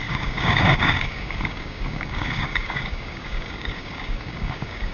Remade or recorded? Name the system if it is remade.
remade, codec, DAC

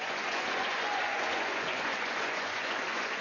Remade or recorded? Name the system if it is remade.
remade, vocoder, Vocos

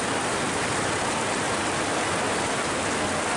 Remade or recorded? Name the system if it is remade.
recorded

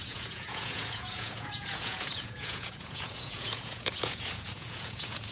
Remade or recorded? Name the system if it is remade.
remade, vocoder, Vocos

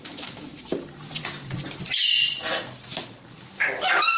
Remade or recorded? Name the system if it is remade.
remade, vocoder, BigVGAN v2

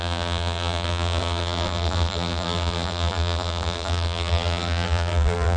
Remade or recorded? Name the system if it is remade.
remade, vocoder, BigVGAN v2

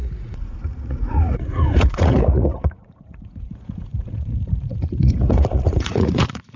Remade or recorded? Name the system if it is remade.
remade, vocoder, Vocos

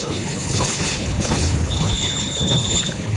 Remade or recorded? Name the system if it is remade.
remade, codec, HILCodec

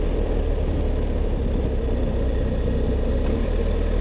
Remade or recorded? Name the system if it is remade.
recorded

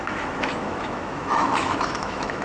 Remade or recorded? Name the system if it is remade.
remade, autoencoder, DAC-VAE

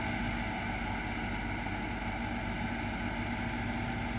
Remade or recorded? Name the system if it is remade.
recorded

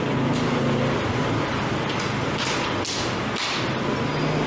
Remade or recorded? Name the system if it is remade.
recorded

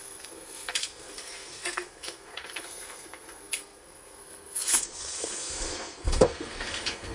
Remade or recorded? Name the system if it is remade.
remade, codec, SNAC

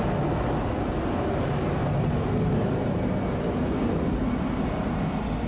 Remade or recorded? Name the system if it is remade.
recorded